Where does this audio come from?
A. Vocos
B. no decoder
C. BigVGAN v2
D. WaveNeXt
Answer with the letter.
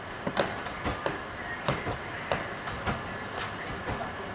B